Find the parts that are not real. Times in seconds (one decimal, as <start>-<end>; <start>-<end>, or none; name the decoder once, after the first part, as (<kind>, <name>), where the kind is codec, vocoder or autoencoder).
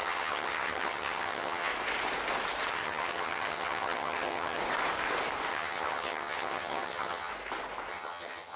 0.0-1.7 (vocoder, HiFi-GAN); 2.7-4.6; 5.5-7.3; 7.9-8.6